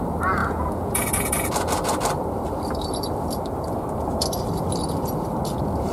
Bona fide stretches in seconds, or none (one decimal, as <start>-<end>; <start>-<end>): 0.0-0.4; 1.5-5.9